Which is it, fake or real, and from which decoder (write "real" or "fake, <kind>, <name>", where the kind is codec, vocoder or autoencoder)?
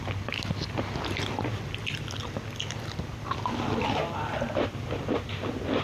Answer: fake, vocoder, BigVGAN v2